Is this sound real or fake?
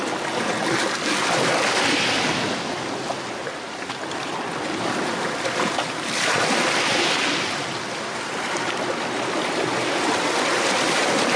real